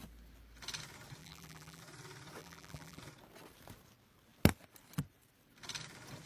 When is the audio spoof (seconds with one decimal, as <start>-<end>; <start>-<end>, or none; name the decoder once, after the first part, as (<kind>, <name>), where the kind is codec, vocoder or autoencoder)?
1.2-1.8 (vocoder, BigVGAN v2); 2.4-3.0